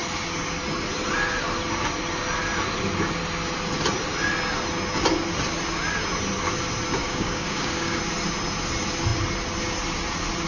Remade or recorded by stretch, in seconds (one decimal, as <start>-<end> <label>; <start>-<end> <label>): 0.0-7.0 recorded; 7.0-8.0 remade; 8.0-10.5 recorded